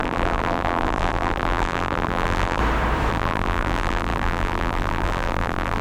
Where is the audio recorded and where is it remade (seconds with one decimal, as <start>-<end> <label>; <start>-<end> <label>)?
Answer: 0.0-2.6 remade; 2.6-3.1 recorded; 3.1-5.8 remade